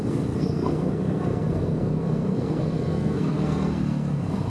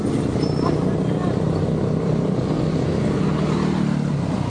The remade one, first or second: first